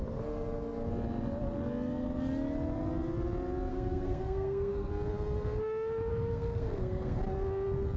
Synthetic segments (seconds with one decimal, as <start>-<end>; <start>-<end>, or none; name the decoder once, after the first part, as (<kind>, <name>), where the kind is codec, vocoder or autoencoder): 3.7-4.9 (codec, SNAC); 6.1-7.2